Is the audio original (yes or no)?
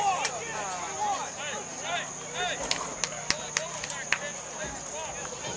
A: yes